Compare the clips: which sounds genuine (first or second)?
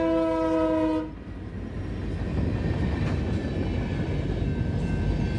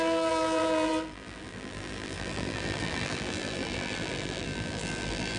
first